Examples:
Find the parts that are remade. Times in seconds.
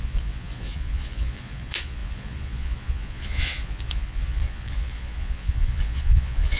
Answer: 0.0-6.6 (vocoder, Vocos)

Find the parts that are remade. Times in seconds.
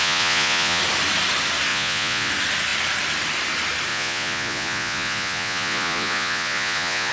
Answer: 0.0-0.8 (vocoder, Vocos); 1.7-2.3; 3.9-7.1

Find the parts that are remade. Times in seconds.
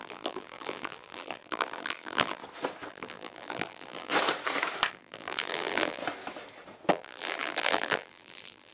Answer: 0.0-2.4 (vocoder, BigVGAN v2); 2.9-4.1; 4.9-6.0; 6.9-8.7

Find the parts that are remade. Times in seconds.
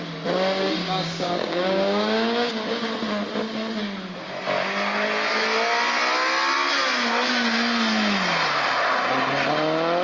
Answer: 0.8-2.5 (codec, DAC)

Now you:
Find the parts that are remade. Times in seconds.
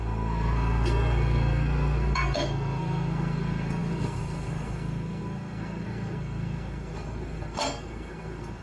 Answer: 0.0-8.6 (codec, SNAC)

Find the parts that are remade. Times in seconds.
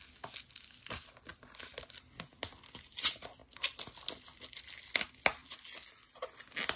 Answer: none